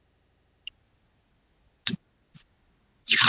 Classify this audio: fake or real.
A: real